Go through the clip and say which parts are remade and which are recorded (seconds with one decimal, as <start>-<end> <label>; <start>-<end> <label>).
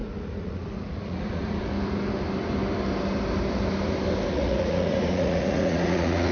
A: 0.0-1.7 remade; 1.7-4.3 recorded; 4.3-6.3 remade